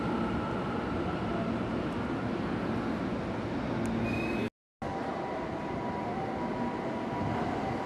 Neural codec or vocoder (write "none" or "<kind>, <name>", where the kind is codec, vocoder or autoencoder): none